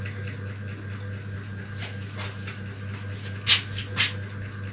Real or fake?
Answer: real